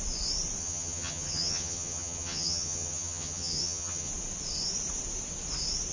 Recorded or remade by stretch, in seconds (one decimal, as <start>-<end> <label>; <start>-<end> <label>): 0.0-0.6 recorded; 0.6-4.1 remade; 4.1-5.9 recorded